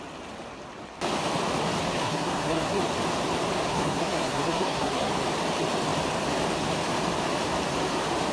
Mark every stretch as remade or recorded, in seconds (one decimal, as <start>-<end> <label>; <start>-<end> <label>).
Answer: 0.0-2.0 recorded; 2.0-2.8 remade; 2.8-3.7 recorded; 3.7-5.1 remade; 5.1-8.3 recorded